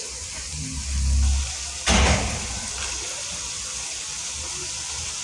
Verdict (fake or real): real